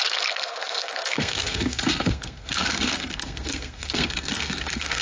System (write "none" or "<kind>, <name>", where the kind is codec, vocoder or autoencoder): codec, SNAC